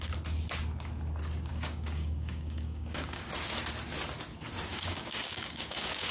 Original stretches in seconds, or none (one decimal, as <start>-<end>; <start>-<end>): 0.0-1.5; 3.3-4.7